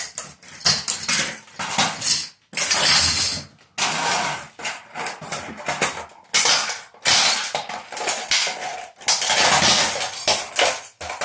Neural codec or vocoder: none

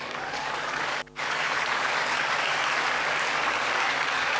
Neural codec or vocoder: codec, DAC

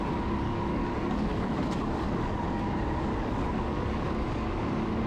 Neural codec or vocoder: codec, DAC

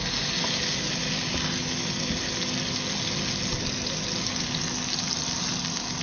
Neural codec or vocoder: none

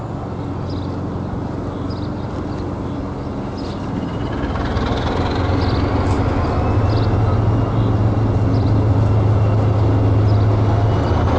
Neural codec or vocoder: none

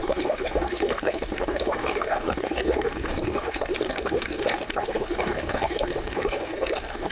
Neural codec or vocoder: codec, DAC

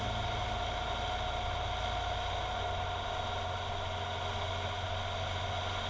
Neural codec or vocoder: none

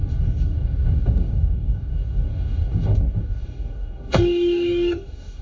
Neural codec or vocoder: codec, DAC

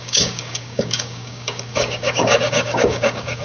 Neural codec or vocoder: codec, DAC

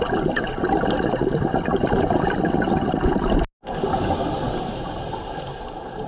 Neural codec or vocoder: none